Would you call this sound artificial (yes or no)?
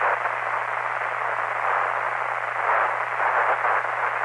no